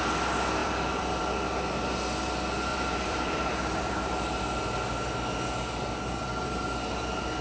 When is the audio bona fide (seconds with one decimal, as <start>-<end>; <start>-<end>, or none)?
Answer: 0.0-0.6; 1.2-2.7; 4.4-7.4